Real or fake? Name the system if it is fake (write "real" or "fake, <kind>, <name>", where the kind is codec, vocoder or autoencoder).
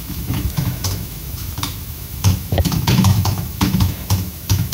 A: fake, autoencoder, DAC-VAE